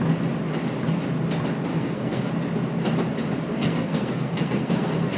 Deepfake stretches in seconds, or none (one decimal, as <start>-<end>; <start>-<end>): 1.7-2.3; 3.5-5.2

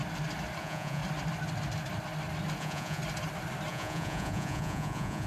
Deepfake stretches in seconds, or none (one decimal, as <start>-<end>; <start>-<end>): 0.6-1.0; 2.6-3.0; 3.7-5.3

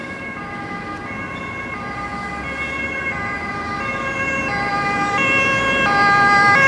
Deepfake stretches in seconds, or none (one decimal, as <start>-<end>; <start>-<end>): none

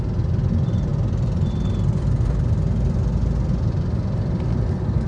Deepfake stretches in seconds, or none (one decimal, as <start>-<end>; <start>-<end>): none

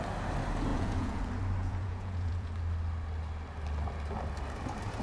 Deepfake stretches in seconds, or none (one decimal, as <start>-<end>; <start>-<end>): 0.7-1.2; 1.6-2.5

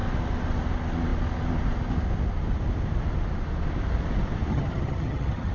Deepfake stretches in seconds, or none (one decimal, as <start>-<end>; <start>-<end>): 4.5-5.5